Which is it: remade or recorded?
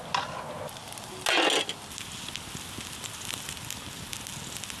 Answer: recorded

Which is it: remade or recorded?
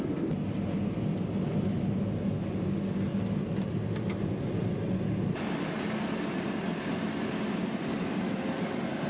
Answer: recorded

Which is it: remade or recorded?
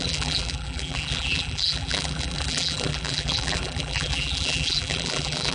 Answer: remade